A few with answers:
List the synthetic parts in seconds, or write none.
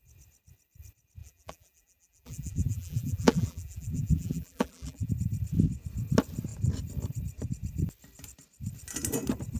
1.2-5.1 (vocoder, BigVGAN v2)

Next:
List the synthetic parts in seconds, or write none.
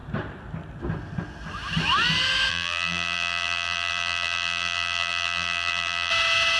2.5-6.1 (vocoder, BigVGAN v2)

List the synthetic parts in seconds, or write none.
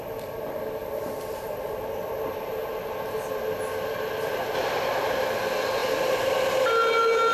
0.8-2.5 (vocoder, BigVGAN v2); 5.8-6.5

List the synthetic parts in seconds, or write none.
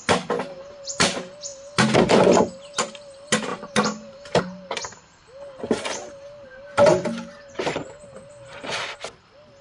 3.5-4.4 (vocoder, BigVGAN v2); 6.9-8.3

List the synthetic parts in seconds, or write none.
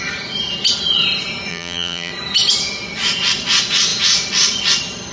1.5-2.1 (vocoder, BigVGAN v2)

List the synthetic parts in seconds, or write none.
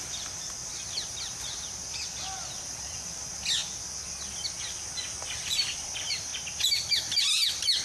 0.0-0.6 (vocoder, BigVGAN v2); 2.0-3.3; 5.2-6.3; 6.9-7.8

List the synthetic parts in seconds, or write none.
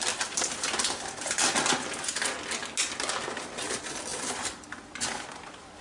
0.0-2.6 (vocoder, BigVGAN v2); 3.4-5.8